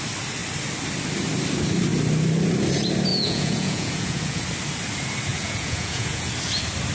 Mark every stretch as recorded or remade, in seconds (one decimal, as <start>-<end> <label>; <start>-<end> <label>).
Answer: 0.0-3.1 recorded; 3.1-4.4 remade; 4.4-5.3 recorded; 5.3-6.3 remade; 6.3-6.9 recorded

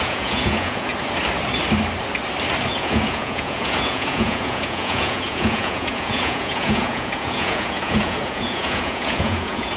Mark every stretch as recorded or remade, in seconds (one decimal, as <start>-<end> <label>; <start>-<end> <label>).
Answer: 0.0-0.9 remade; 0.9-2.7 recorded; 2.7-9.8 remade

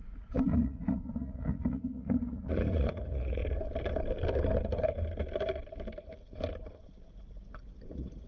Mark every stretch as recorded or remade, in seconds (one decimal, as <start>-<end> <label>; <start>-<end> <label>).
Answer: 0.0-3.4 remade; 3.4-7.9 recorded; 7.9-8.3 remade

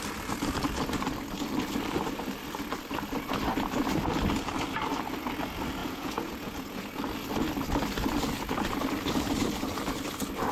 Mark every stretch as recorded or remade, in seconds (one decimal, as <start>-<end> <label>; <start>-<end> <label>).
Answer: 0.0-5.8 recorded; 5.8-7.0 remade; 7.0-10.5 recorded

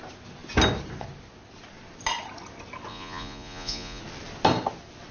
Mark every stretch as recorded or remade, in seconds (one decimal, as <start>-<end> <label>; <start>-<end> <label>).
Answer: 0.0-2.9 recorded; 2.9-4.0 remade; 4.0-5.1 recorded

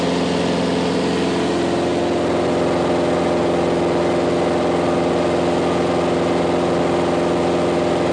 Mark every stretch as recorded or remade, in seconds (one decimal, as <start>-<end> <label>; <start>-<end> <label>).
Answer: 0.0-8.1 recorded

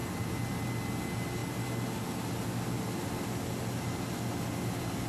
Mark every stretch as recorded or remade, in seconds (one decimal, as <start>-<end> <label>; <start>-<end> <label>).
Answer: 0.0-5.1 recorded

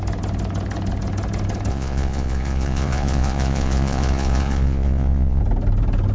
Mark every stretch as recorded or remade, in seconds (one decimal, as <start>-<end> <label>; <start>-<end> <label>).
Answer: 0.0-1.7 recorded; 1.7-5.4 remade; 5.4-6.1 recorded